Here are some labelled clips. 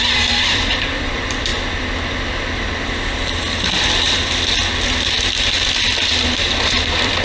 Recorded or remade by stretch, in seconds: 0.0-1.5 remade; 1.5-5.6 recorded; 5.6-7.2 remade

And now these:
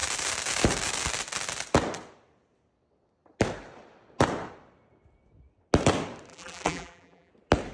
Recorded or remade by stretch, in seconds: 0.0-6.3 recorded; 6.3-7.3 remade; 7.3-7.7 recorded

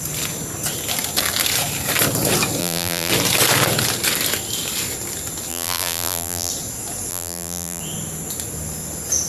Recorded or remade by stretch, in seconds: 0.0-2.6 recorded; 2.6-3.1 remade; 3.1-5.5 recorded; 5.5-6.5 remade; 6.5-7.1 recorded; 7.1-7.8 remade; 7.8-9.3 recorded

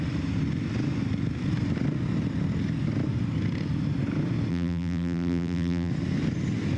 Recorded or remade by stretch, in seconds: 0.0-4.5 recorded; 4.5-5.9 remade; 5.9-6.8 recorded

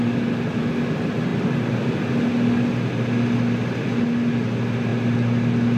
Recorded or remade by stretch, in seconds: 0.0-5.8 recorded